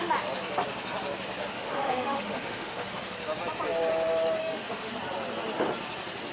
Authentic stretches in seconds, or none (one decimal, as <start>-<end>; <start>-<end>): 0.0-1.5; 3.0-4.4; 4.9-6.3